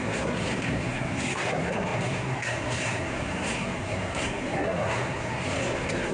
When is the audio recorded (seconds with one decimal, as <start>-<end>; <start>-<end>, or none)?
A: none

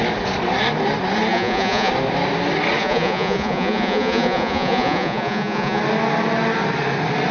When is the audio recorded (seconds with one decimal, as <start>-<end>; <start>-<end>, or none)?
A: 0.0-1.3; 1.9-2.8; 5.8-7.3

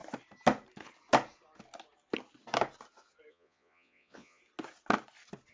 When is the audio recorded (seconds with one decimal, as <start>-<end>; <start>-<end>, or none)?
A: 0.0-3.3; 4.4-5.5

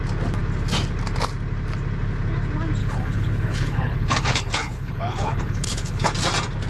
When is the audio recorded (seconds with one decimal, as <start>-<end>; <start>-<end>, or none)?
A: 0.0-2.8; 6.1-6.7